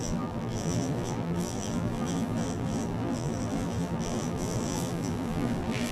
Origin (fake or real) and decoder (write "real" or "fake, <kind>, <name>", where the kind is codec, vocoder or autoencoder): fake, vocoder, BigVGAN v2